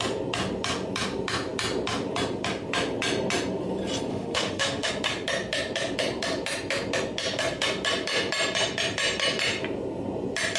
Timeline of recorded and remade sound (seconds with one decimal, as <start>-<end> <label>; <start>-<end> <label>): 0.0-4.1 recorded; 4.1-4.9 remade; 4.9-10.6 recorded